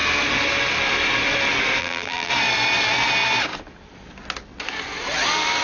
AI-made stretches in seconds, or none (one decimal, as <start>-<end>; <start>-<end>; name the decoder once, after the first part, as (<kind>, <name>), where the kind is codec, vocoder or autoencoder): 1.8-2.3 (vocoder, BigVGAN v2)